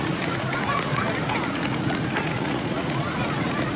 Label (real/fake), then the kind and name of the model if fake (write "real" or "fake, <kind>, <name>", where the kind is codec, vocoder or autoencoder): fake, vocoder, Vocos